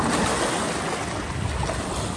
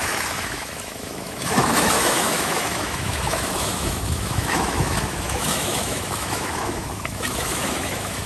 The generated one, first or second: second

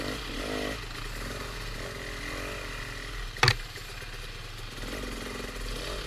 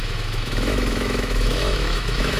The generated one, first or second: second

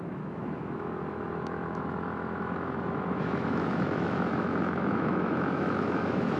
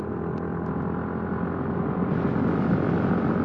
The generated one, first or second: first